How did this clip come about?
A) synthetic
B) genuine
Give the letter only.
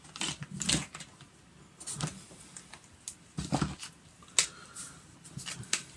B